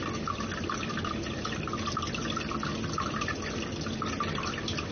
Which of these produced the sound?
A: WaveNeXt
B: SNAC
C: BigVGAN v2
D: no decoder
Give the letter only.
D